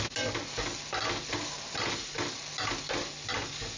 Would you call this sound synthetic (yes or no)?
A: no